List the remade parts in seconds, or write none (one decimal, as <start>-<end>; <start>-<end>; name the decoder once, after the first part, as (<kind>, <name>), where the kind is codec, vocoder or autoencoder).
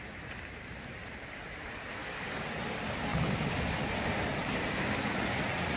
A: 5.0-5.8 (vocoder, Vocos)